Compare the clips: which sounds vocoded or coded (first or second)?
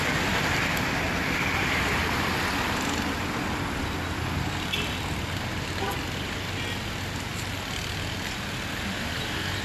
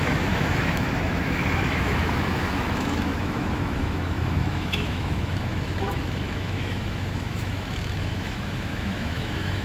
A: second